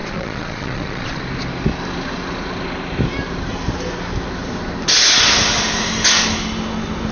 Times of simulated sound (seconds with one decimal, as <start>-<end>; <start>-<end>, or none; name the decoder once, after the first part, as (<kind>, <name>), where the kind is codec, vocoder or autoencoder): 0.0-1.2 (vocoder, Vocos)